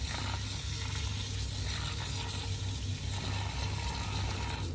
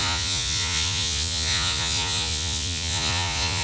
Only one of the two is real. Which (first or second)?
first